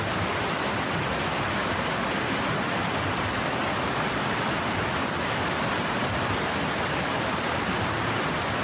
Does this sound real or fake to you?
real